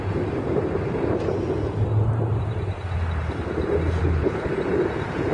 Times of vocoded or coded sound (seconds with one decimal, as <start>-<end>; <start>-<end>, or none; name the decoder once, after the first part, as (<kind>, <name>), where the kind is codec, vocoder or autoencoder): 4.0-4.5 (codec, HILCodec)